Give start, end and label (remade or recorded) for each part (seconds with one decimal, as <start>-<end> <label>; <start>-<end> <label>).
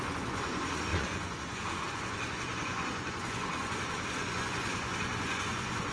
0.0-5.9 remade